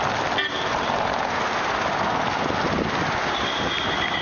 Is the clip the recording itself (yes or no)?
yes